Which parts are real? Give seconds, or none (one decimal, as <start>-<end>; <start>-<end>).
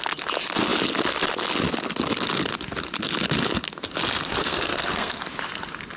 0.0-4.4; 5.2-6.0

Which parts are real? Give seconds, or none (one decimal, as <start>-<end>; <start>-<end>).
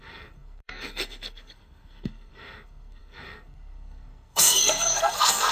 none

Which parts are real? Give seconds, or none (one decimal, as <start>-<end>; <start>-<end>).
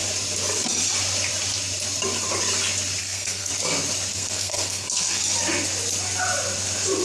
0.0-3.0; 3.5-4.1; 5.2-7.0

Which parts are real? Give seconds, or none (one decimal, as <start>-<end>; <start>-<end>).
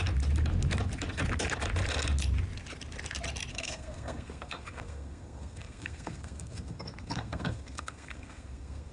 0.0-3.5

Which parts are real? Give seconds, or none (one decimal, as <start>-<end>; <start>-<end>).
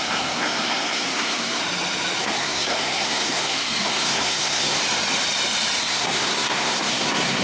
1.6-2.2; 4.8-5.8